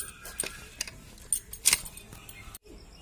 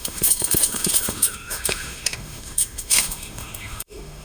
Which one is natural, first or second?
first